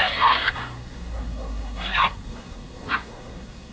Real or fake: fake